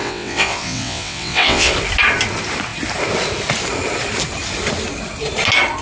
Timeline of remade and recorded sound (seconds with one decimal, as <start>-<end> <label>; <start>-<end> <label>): 0.0-1.7 remade; 1.7-5.8 recorded